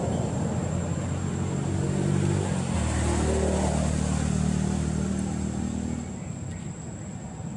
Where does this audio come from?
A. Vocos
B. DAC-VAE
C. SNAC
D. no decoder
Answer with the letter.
D